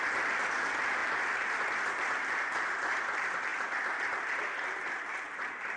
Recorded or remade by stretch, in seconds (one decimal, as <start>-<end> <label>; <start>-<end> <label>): 0.0-5.8 recorded